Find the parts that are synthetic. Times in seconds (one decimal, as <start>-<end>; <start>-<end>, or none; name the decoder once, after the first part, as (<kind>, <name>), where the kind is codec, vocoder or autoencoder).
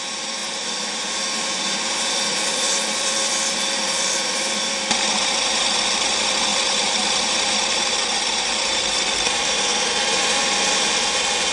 0.0-11.5 (vocoder, BigVGAN v2)